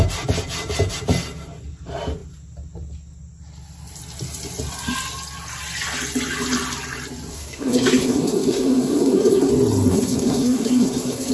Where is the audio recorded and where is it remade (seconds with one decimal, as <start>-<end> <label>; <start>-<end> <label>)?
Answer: 0.0-7.3 recorded; 7.3-9.5 remade; 9.5-9.9 recorded; 9.9-11.3 remade